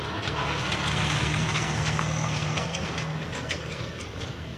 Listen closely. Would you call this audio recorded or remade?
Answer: remade